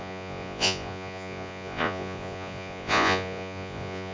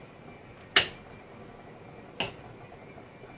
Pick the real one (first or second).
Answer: second